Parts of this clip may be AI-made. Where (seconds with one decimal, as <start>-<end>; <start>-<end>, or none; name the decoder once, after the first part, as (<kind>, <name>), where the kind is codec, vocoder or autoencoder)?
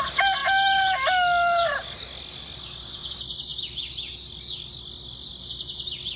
none